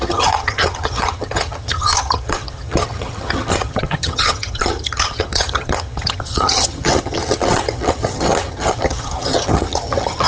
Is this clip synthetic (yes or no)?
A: yes